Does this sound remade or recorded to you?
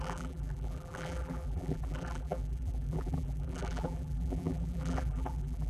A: remade